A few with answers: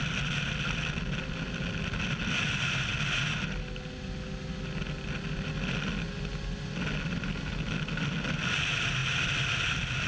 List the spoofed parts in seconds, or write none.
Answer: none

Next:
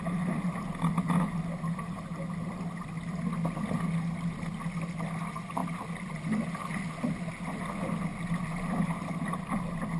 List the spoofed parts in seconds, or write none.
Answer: none